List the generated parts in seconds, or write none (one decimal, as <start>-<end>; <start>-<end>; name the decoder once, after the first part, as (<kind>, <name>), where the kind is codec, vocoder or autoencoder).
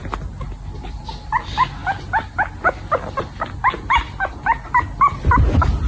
none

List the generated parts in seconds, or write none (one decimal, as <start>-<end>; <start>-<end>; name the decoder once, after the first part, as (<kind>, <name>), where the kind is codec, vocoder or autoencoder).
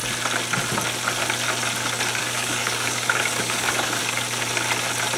2.2-4.0 (codec, DAC)